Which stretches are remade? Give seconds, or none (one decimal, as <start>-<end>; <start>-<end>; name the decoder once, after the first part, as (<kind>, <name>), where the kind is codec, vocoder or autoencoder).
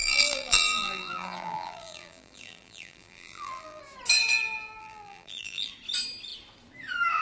0.0-3.8 (vocoder, BigVGAN v2); 4.8-5.7